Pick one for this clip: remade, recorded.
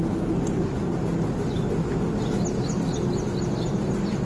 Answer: recorded